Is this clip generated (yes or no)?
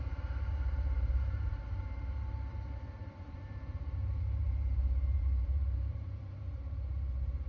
yes